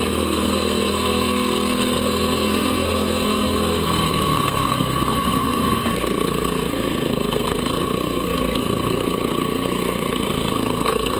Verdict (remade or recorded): remade